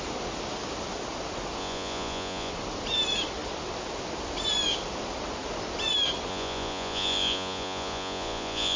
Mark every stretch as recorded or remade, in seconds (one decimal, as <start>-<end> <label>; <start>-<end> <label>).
0.0-1.6 recorded; 1.6-2.5 remade; 2.5-6.3 recorded; 6.3-8.8 remade